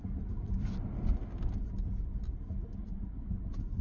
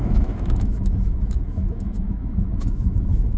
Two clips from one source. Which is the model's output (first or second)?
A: second